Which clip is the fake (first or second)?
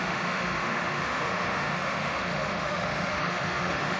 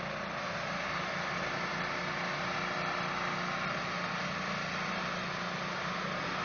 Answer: first